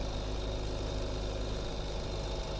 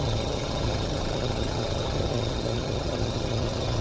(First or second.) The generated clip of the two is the second